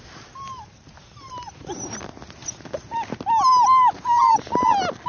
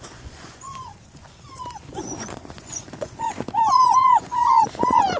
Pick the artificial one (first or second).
second